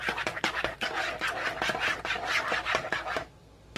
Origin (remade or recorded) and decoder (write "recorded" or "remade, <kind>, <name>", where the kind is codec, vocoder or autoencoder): recorded